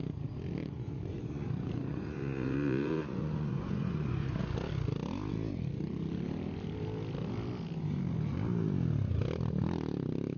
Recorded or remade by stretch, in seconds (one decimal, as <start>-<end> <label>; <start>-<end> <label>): 0.0-0.6 recorded; 0.6-4.4 remade; 4.4-10.4 recorded

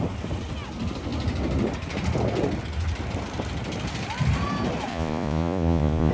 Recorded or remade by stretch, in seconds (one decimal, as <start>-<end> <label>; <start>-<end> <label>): 0.0-4.9 recorded; 4.9-6.1 remade

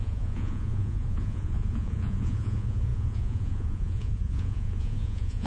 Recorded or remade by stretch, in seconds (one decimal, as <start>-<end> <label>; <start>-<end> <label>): 0.0-5.5 remade

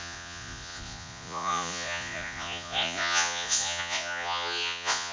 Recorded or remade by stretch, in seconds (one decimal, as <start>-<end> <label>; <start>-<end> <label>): 0.0-5.1 remade

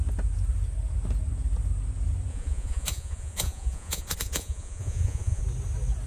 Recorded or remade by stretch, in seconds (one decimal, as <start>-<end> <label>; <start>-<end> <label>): 0.0-2.3 recorded; 2.3-5.4 remade; 5.4-6.1 recorded